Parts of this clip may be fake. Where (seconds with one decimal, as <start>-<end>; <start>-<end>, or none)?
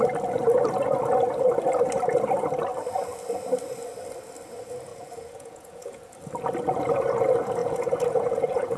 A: 4.9-6.1; 7.6-8.8